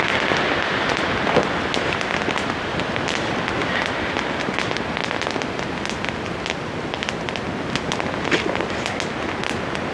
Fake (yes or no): no